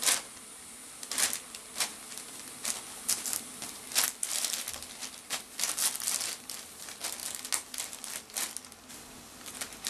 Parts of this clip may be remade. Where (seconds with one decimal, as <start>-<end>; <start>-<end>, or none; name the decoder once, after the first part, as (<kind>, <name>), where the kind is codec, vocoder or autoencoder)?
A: none